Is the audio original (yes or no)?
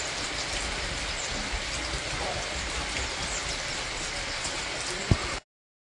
yes